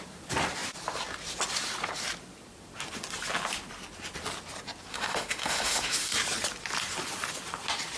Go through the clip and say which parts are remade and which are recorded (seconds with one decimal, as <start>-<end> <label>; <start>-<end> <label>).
0.0-4.9 recorded; 4.9-6.1 remade; 6.1-8.0 recorded